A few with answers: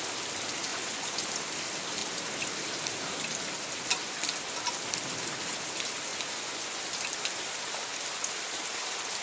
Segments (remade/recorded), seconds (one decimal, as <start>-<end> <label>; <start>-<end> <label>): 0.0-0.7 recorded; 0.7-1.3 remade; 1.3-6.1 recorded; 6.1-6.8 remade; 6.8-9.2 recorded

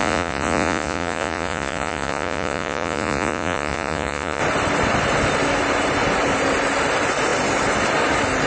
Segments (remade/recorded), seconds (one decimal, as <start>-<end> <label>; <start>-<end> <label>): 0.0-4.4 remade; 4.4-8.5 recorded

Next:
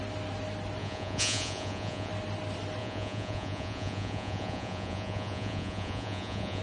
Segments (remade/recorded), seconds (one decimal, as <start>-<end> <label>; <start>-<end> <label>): 0.0-0.8 recorded; 0.8-2.1 remade; 2.1-2.8 recorded; 2.8-6.6 remade

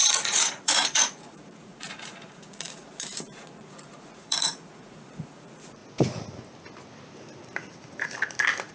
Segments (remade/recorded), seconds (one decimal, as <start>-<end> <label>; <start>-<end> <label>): 0.0-5.8 remade; 5.8-8.7 recorded

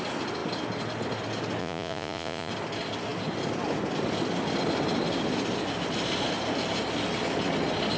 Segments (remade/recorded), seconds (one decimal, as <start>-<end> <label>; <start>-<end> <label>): 0.0-1.6 recorded; 1.6-2.5 remade; 2.5-8.0 recorded

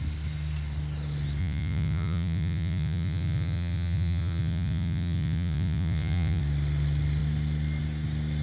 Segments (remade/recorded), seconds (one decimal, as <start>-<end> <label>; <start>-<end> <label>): 0.0-1.4 recorded; 1.4-6.4 remade; 6.4-8.4 recorded

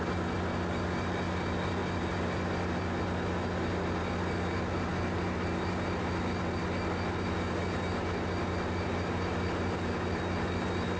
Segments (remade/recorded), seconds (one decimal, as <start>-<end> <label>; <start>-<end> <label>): 0.0-11.0 recorded